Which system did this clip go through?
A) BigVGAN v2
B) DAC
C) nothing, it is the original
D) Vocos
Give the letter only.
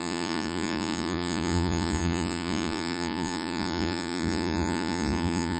D